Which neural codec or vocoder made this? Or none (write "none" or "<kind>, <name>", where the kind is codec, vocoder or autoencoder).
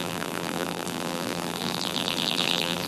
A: vocoder, BigVGAN v2